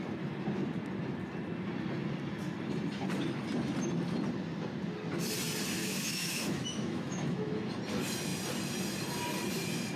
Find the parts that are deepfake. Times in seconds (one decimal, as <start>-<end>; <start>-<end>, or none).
5.8-7.7